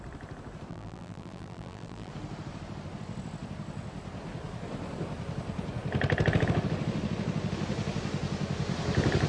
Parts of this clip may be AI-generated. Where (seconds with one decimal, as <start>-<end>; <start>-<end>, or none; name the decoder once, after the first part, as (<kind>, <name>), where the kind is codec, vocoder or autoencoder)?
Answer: 0.7-2.1 (vocoder, BigVGAN v2)